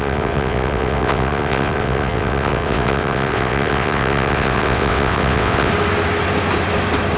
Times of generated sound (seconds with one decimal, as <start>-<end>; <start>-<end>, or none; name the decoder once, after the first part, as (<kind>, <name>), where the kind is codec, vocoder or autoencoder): 0.0-5.7 (vocoder, WaveNeXt)